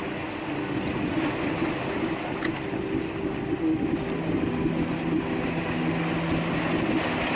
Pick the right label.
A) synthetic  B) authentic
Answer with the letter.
B